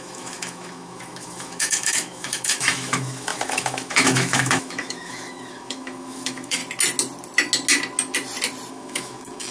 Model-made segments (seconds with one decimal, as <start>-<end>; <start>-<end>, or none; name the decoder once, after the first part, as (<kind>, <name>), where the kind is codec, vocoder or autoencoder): 0.0-6.6 (autoencoder, DAC-VAE); 8.7-9.5

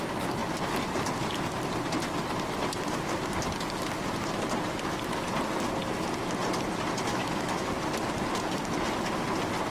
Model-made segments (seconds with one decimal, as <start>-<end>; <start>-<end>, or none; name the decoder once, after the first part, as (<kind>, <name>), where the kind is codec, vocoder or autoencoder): 7.1-7.7 (autoencoder, DAC-VAE)